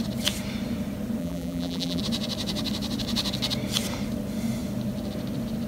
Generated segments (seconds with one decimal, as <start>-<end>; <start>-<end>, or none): 1.2-2.0